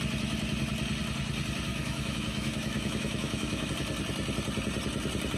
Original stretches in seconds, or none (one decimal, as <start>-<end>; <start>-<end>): 0.0-1.7; 3.7-5.4